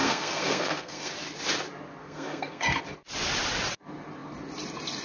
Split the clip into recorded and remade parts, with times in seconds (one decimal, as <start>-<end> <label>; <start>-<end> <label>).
0.0-1.1 remade; 1.1-2.0 recorded; 2.0-2.8 remade; 2.8-5.0 recorded